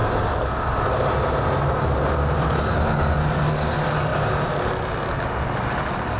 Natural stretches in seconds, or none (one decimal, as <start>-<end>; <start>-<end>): 0.0-6.2